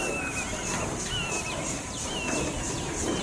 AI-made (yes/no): no